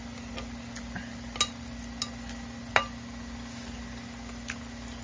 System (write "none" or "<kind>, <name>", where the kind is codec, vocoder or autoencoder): none